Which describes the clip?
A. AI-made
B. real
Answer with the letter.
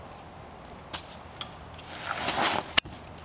B